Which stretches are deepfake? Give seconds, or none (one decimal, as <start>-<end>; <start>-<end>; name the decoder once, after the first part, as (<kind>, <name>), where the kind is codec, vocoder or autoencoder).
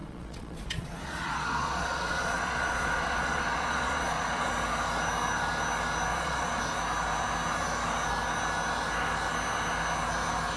0.0-4.5 (vocoder, Vocos); 6.1-6.6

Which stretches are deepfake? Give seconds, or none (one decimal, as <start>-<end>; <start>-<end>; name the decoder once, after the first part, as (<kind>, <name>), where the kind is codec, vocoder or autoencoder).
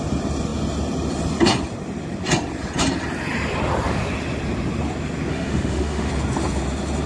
5.3-6.1 (autoencoder, DAC-VAE)